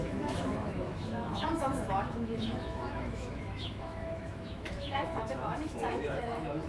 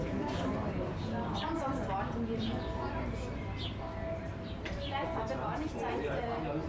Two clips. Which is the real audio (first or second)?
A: second